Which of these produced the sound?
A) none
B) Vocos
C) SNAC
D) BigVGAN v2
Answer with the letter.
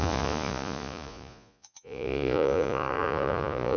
B